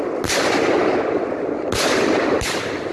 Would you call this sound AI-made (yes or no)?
no